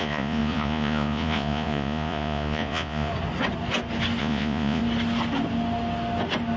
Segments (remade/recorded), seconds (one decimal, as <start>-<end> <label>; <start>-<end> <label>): 0.0-3.1 remade; 3.1-4.2 recorded; 4.2-4.8 remade; 4.8-6.6 recorded